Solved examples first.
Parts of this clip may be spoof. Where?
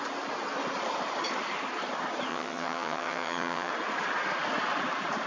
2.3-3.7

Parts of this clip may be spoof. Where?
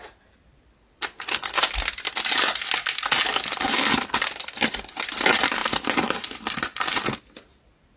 none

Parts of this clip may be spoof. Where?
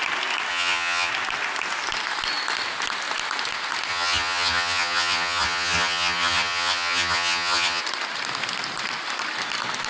0.5-1.1; 3.9-7.8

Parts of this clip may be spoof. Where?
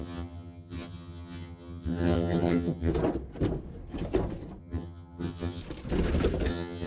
0.0-2.9; 4.6-5.6; 6.5-6.9